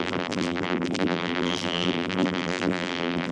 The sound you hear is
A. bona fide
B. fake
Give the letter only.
B